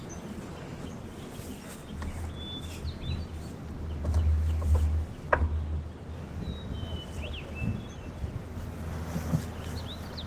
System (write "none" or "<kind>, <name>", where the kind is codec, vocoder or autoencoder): none